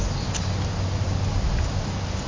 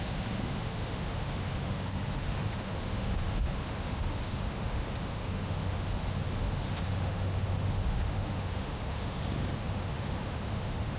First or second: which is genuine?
first